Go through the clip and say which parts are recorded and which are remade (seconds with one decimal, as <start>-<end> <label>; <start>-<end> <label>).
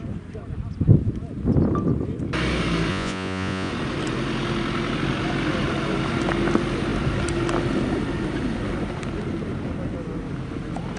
0.0-2.9 recorded; 2.9-3.7 remade; 3.7-11.0 recorded